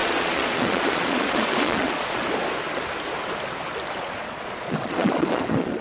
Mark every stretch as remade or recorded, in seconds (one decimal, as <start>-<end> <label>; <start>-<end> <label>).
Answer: 0.0-2.2 remade; 2.2-4.0 recorded; 4.0-5.8 remade